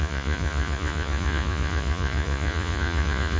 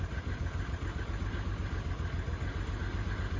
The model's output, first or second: first